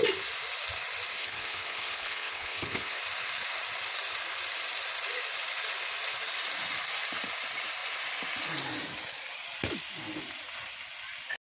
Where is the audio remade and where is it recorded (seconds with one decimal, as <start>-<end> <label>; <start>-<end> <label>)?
0.0-1.2 recorded; 1.2-3.0 remade; 3.0-11.4 recorded